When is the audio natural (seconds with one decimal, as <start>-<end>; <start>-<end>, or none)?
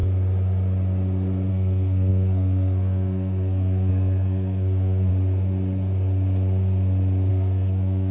0.0-1.5; 5.1-7.3